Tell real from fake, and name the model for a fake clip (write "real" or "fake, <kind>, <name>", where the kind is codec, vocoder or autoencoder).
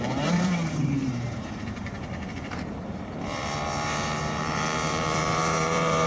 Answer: fake, vocoder, BigVGAN v2